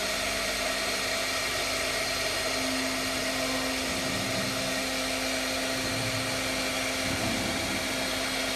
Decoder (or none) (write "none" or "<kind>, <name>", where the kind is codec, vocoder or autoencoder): none